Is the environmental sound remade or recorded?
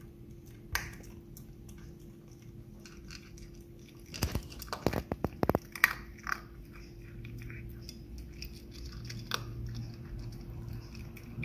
recorded